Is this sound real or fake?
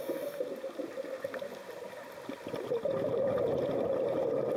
real